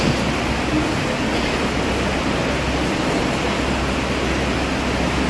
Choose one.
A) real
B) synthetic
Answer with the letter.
A